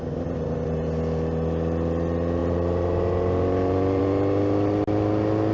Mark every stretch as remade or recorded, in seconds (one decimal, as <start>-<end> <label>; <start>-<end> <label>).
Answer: 0.0-5.5 recorded